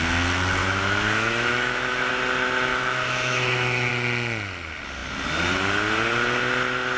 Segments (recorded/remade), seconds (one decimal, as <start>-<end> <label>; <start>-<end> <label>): 0.0-0.6 recorded; 0.6-2.1 remade; 2.1-2.7 recorded; 2.7-3.9 remade; 3.9-7.0 recorded